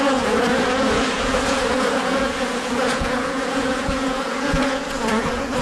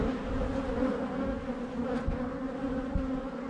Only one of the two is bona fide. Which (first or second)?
second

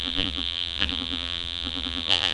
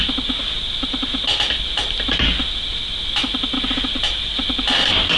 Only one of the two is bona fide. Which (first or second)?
second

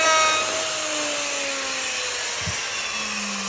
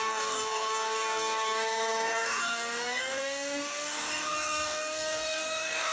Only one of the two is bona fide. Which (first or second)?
first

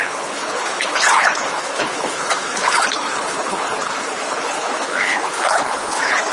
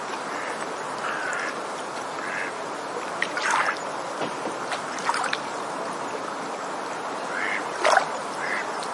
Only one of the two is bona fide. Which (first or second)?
second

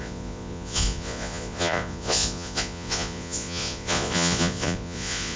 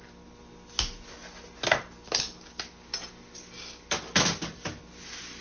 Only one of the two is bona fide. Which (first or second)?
second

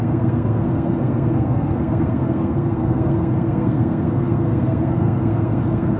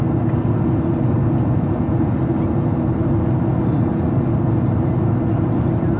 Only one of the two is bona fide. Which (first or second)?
second